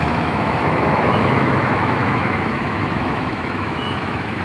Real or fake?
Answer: fake